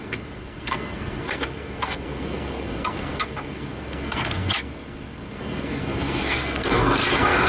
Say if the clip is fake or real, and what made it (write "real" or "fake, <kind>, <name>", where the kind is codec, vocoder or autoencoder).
fake, codec, SNAC